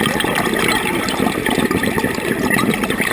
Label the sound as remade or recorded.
recorded